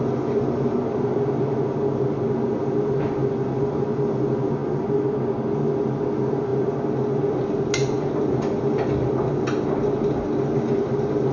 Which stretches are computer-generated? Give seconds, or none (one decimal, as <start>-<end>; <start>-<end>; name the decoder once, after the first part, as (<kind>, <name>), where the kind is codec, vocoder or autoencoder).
none